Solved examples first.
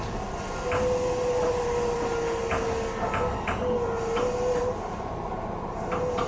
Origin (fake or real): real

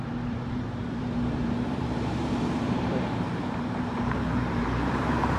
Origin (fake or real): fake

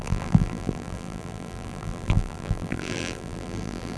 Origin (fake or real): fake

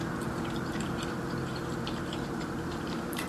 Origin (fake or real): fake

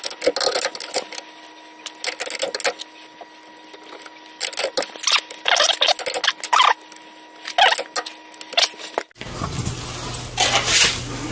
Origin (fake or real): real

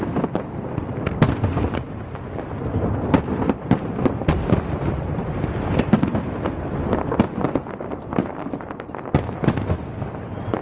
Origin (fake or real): fake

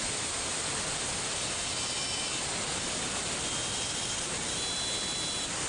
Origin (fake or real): real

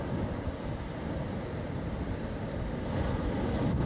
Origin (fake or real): real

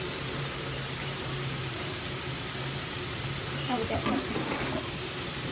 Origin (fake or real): fake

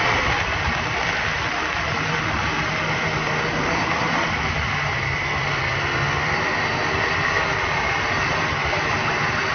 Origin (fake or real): fake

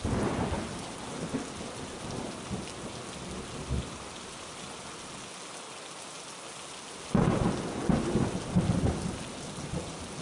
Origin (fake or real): real